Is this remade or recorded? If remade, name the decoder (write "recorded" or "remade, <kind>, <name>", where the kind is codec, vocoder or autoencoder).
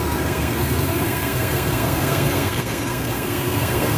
remade, codec, SNAC